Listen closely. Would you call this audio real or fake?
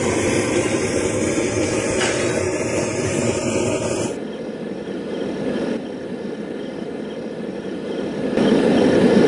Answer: real